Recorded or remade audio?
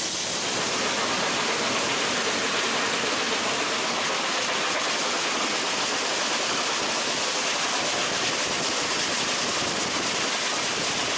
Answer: recorded